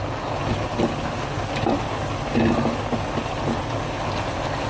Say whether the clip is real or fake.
real